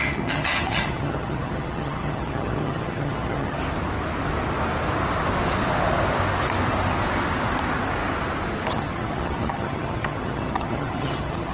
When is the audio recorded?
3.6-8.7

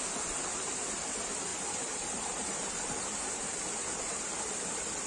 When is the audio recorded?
0.0-5.1

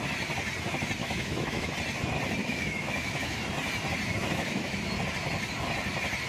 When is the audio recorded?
0.0-1.0; 1.7-2.4; 3.4-4.2; 5.0-6.3

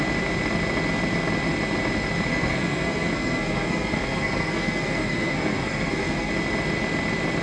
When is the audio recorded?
0.0-2.3; 6.3-7.4

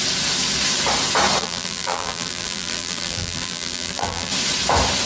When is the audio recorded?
0.0-1.4; 4.3-5.1

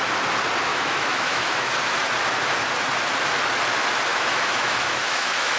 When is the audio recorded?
0.0-0.7; 1.7-4.1

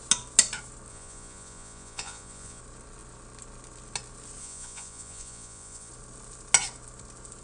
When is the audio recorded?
0.0-0.9; 2.6-4.4; 5.9-7.4